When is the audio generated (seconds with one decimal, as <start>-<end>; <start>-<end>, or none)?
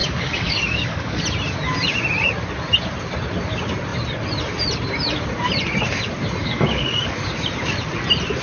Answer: 0.0-1.2; 6.4-7.3